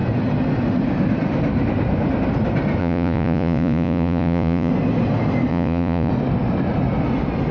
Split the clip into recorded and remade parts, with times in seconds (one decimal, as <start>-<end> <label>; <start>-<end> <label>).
0.0-2.8 recorded; 2.8-4.7 remade; 4.7-5.5 recorded; 5.5-6.1 remade; 6.1-7.5 recorded